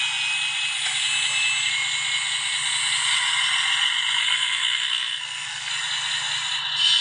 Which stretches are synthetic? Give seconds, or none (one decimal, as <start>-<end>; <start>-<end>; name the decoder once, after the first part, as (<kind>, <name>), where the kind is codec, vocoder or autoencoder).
4.2-5.7 (codec, SNAC)